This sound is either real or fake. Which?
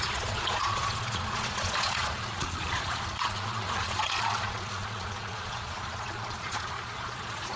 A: fake